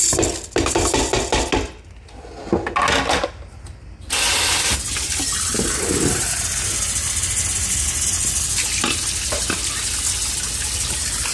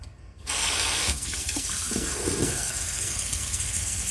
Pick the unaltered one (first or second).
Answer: first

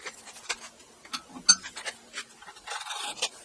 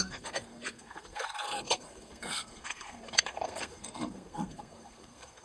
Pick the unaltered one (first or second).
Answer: first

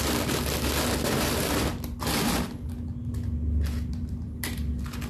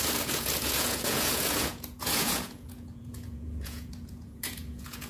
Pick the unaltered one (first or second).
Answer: first